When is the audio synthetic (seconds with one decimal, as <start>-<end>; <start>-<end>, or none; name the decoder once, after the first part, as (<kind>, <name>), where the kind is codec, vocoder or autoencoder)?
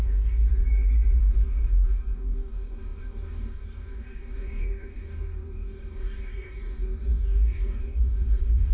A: 0.0-0.5 (codec, DAC); 1.2-8.7